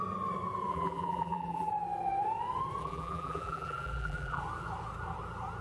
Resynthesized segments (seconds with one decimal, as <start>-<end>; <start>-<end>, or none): 0.7-1.7; 2.8-4.4